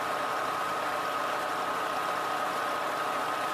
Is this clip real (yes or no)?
yes